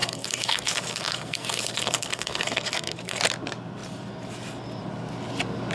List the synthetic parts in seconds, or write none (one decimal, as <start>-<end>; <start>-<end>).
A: 0.0-3.2